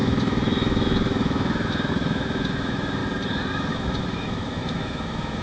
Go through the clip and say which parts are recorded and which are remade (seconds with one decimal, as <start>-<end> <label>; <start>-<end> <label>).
0.0-3.0 remade; 3.0-3.7 recorded; 3.7-5.4 remade